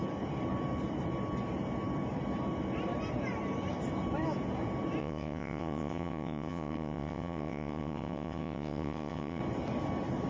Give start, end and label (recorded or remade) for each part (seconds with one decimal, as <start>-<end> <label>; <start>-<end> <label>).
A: 0.0-5.0 recorded; 5.0-9.4 remade; 9.4-10.3 recorded